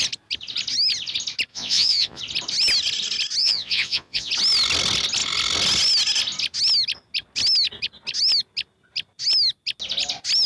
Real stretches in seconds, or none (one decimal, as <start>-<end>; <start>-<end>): 0.0-1.5; 2.2-3.4; 4.3-10.5